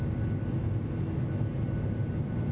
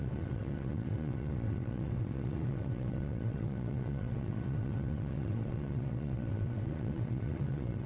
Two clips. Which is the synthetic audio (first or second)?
second